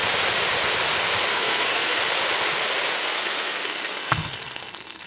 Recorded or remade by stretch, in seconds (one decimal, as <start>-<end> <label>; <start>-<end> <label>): 0.0-1.3 recorded; 1.3-2.0 remade; 2.0-3.0 recorded; 3.0-5.1 remade